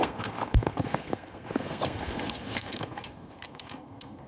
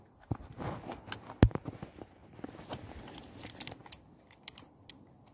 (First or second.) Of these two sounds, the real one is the second